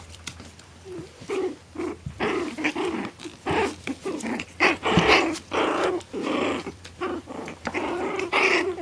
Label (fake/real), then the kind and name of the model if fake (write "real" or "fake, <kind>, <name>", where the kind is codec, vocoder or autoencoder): fake, vocoder, BigVGAN v2